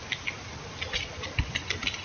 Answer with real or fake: real